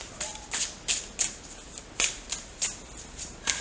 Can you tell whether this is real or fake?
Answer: real